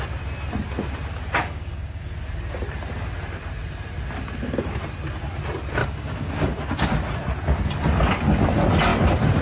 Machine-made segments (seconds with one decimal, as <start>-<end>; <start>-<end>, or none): 1.4-2.0; 5.8-6.3